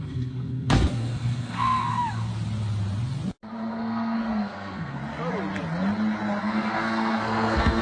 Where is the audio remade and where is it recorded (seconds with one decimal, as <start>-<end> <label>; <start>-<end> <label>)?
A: 0.0-2.3 remade; 2.3-3.7 recorded; 3.7-5.0 remade; 5.0-6.4 recorded; 6.4-7.8 remade